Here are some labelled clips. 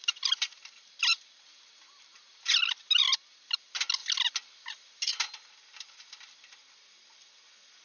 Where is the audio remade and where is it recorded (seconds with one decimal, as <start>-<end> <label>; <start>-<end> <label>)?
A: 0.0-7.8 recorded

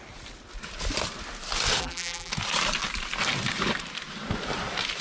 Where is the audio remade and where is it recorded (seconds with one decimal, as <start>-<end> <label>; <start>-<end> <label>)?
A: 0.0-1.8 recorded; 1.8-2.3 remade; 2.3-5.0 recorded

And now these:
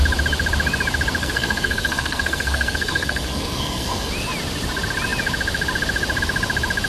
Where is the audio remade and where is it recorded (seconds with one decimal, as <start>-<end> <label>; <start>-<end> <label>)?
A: 0.0-1.2 recorded; 1.2-4.1 remade; 4.1-6.9 recorded